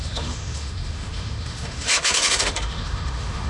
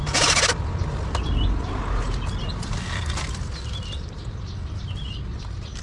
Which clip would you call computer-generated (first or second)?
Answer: first